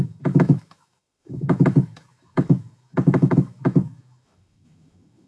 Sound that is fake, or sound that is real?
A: fake